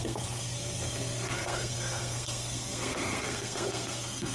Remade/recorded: remade